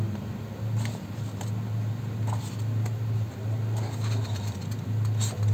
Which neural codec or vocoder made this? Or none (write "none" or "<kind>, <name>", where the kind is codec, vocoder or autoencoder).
none